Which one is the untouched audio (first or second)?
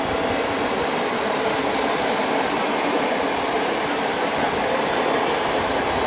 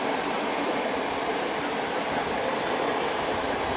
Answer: first